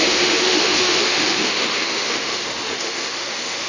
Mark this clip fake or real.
fake